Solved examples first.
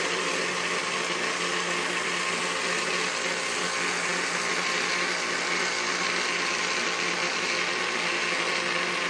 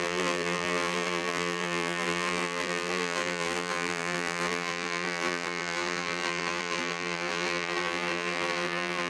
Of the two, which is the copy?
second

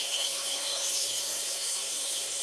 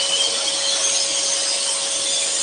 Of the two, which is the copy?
first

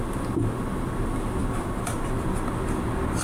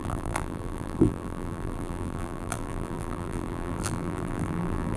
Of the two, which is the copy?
second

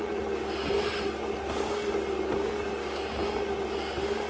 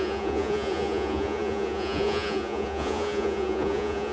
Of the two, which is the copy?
second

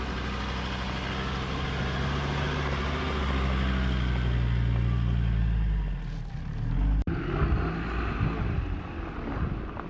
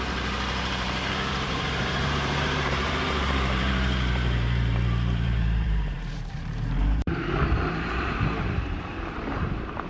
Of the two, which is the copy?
second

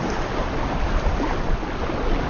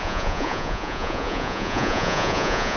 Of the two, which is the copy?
second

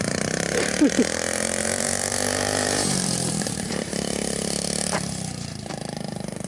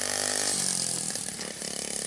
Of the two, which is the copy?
first